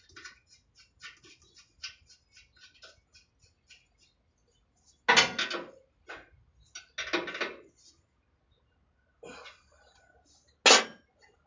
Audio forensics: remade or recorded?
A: recorded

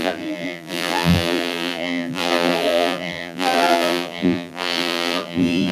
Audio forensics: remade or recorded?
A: remade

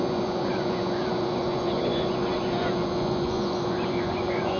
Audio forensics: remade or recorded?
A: remade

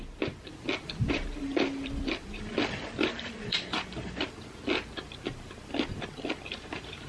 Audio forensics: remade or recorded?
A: remade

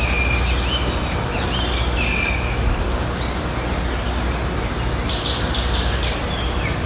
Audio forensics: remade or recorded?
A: recorded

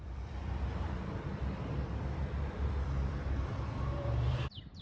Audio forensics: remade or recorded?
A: remade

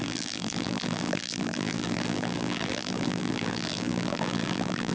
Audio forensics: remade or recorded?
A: remade